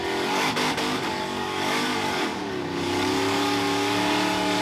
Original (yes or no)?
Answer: no